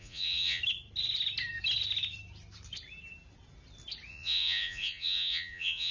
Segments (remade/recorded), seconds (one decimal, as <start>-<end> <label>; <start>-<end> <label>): 0.0-0.6 remade; 0.6-4.1 recorded; 4.1-5.9 remade